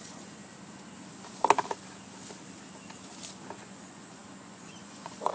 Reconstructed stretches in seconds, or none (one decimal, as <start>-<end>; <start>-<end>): 0.0-0.4; 3.6-5.3